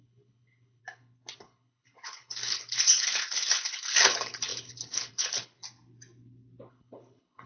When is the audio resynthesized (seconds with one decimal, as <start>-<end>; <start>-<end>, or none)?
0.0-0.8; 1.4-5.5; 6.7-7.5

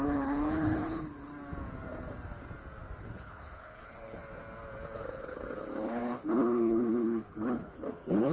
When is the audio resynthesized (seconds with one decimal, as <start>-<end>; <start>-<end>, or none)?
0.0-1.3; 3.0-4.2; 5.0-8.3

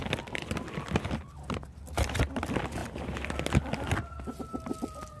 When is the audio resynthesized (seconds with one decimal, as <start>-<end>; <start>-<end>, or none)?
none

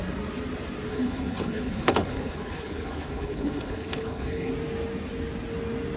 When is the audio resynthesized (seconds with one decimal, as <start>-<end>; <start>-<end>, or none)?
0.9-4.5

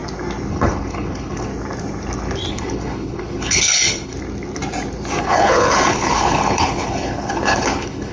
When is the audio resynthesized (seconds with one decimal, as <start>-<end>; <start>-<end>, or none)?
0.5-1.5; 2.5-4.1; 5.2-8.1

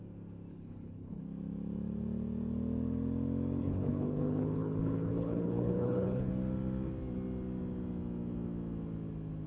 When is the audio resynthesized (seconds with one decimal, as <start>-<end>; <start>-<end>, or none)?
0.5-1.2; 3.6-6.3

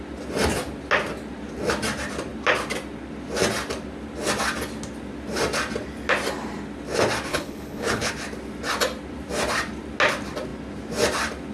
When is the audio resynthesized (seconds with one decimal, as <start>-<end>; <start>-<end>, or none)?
7.3-8.1